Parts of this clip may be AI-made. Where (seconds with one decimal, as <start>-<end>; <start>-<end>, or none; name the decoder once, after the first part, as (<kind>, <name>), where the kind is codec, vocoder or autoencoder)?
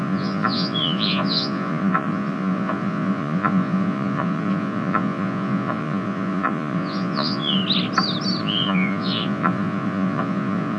0.0-7.6 (vocoder, Vocos); 8.4-10.8